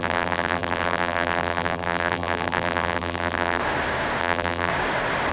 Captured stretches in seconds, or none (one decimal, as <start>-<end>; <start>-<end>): 3.6-4.2; 4.7-5.3